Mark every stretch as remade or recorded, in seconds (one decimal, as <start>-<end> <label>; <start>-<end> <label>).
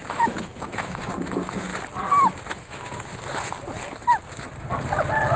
0.0-1.7 remade; 1.7-2.5 recorded; 2.5-3.1 remade; 3.1-5.4 recorded